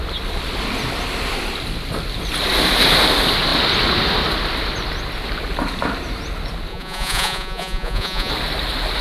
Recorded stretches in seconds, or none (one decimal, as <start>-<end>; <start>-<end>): 0.0-6.7; 8.3-9.0